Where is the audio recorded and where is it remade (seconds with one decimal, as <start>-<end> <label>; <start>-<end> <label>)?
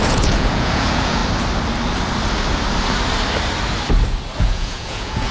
0.0-1.2 remade; 1.2-4.4 recorded; 4.4-5.3 remade